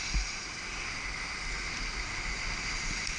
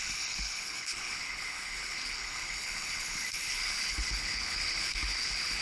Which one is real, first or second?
first